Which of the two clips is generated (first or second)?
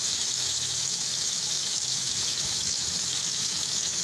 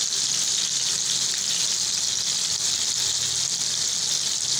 first